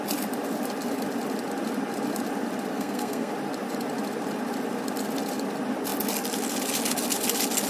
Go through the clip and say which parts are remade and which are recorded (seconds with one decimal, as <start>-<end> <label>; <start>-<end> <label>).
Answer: 0.0-2.7 recorded; 2.7-3.3 remade; 3.3-7.7 recorded